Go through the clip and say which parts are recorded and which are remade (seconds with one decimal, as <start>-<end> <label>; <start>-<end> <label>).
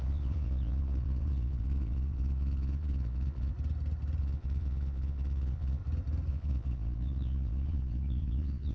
0.0-3.5 remade; 3.5-4.2 recorded; 4.2-5.8 remade; 5.8-6.3 recorded; 6.3-8.7 remade